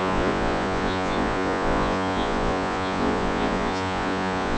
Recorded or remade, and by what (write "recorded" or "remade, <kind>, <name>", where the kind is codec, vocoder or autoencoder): remade, vocoder, Vocos